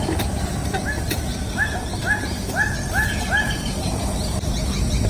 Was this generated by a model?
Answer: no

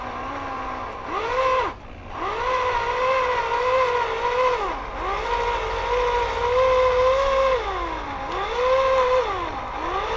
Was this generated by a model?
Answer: no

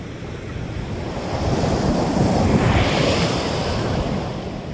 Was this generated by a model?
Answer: no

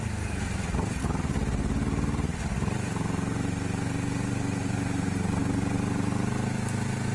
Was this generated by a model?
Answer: no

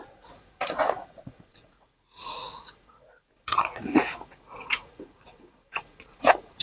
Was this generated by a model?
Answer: yes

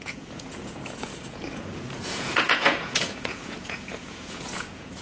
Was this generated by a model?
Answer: yes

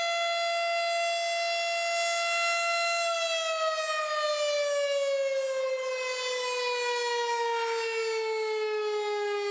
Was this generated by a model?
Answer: no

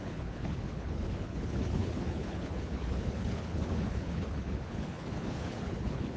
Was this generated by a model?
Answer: yes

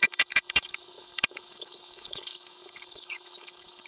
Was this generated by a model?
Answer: yes